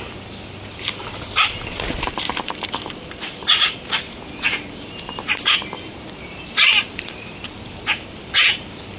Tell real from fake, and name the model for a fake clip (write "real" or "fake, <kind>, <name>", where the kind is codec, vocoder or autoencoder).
fake, vocoder, BigVGAN v2